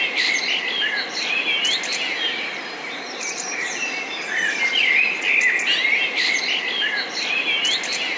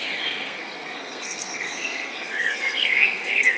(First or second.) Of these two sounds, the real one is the first